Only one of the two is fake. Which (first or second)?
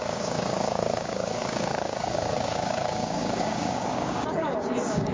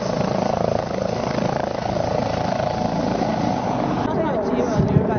first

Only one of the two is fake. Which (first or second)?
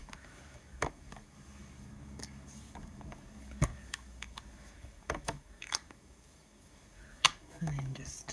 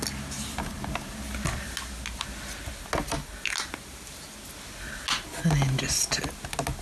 first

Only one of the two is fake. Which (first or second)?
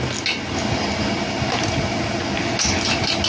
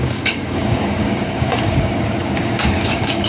second